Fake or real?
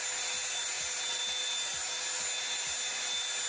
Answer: real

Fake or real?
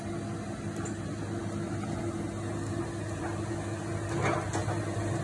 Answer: real